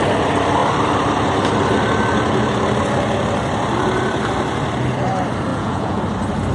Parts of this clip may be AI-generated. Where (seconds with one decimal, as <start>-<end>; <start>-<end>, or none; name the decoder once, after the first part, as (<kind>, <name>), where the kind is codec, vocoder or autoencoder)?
5.5-6.0 (vocoder, Vocos)